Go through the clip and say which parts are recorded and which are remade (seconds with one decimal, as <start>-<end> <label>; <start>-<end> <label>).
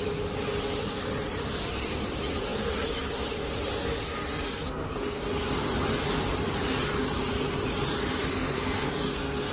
0.0-4.3 recorded; 4.3-5.2 remade; 5.2-8.3 recorded; 8.3-9.5 remade